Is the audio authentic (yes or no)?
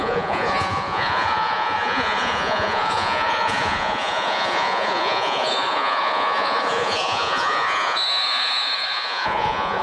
no